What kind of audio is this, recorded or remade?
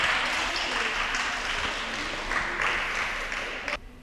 recorded